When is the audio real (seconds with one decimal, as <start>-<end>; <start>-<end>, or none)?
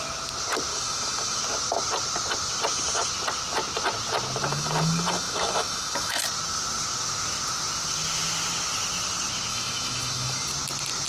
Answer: 0.0-0.7; 1.4-4.5; 6.2-9.5; 10.5-11.1